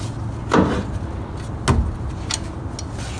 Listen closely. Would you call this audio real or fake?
real